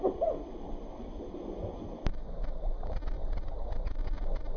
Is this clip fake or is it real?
real